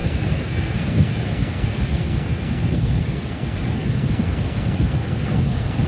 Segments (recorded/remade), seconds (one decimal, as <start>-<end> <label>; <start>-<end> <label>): 0.0-5.9 remade